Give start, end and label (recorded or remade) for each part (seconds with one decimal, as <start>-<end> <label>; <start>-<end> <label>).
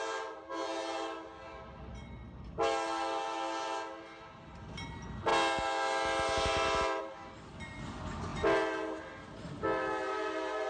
0.0-10.7 recorded